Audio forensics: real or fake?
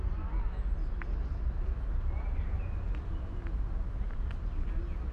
real